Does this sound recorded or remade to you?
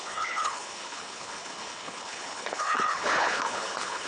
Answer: remade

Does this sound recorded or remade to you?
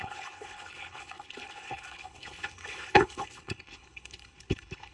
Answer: remade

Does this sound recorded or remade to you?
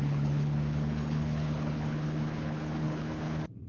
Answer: remade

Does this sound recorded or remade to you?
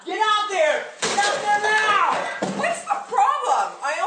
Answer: recorded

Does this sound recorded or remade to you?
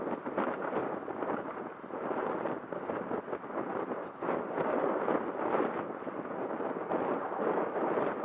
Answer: recorded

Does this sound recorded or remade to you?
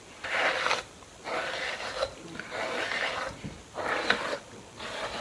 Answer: recorded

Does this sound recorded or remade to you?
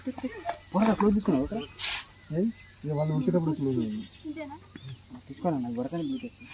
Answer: recorded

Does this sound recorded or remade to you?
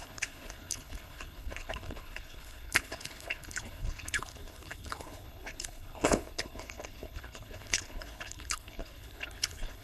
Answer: remade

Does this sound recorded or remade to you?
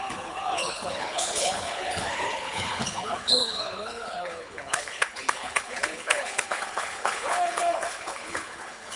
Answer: remade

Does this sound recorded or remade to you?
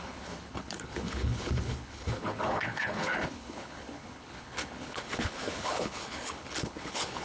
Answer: remade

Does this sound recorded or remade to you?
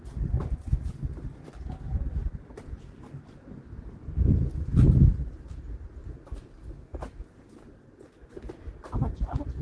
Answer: recorded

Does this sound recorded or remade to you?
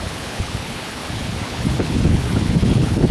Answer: remade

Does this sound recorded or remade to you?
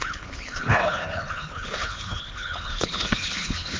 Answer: remade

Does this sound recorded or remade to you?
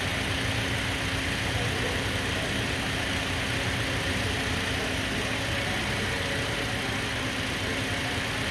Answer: recorded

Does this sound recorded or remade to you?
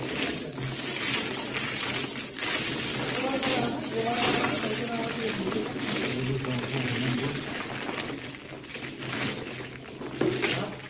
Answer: recorded